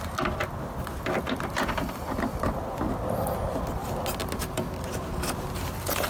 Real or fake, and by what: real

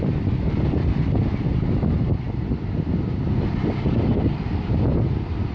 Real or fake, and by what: real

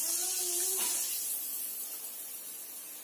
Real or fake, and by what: real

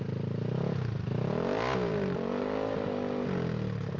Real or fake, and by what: real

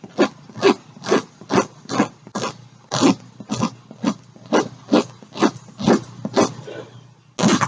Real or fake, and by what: real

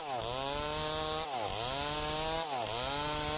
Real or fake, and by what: real